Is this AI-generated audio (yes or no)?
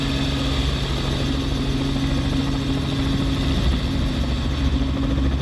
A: no